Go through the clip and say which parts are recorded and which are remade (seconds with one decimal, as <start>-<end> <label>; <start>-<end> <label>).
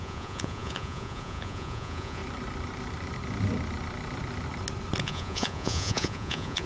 0.0-2.2 remade; 2.2-5.0 recorded; 5.0-6.7 remade